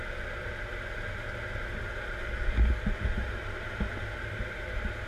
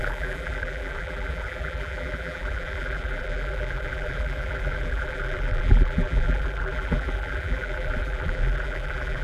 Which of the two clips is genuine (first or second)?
first